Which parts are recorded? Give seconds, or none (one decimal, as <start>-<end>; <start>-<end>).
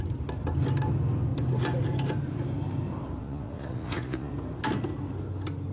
0.0-3.2; 4.3-5.7